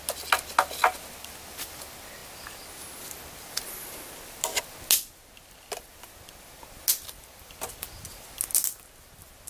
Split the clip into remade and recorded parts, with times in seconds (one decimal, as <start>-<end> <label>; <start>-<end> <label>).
0.0-9.5 recorded